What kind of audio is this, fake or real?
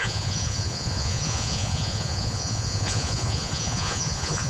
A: fake